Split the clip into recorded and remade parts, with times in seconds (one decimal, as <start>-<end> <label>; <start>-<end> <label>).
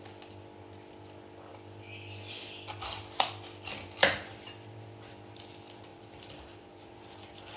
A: 0.0-5.9 recorded; 5.9-6.9 remade; 6.9-7.6 recorded